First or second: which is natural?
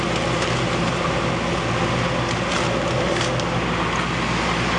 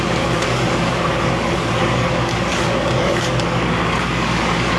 first